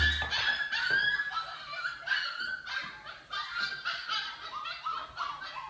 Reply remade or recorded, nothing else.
recorded